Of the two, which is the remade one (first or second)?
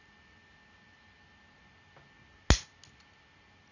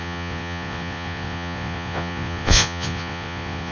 second